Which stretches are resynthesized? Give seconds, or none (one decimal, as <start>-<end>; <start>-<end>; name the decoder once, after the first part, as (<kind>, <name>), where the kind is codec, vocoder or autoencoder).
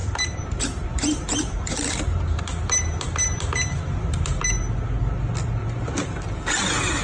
0.0-2.4 (vocoder, BigVGAN v2); 5.6-6.2